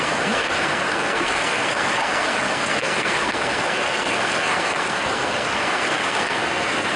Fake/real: fake